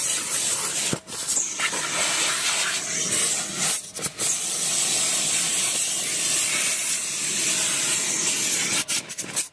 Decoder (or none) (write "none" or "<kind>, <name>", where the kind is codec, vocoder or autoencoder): none